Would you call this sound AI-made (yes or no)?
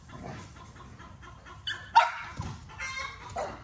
no